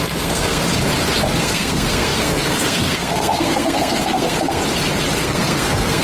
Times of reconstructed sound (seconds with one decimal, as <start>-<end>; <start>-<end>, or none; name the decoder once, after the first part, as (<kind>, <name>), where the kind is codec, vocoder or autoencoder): 0.0-0.6 (codec, SNAC); 1.4-4.6; 5.2-6.0